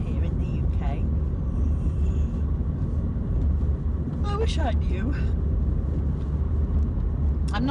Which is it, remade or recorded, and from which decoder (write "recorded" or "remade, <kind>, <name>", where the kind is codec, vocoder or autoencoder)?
recorded